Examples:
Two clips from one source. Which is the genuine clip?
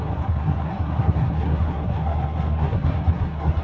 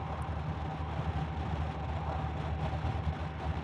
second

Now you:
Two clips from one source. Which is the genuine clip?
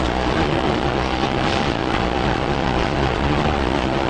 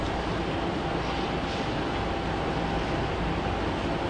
second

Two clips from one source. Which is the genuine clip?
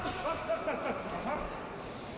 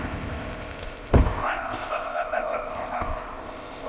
first